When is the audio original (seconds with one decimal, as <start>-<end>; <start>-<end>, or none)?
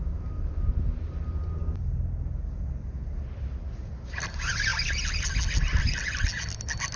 0.0-7.0